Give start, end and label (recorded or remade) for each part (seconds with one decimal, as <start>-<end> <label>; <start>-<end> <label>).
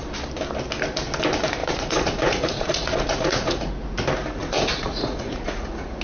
0.0-1.6 recorded; 1.6-3.7 remade; 3.7-4.4 recorded; 4.4-6.0 remade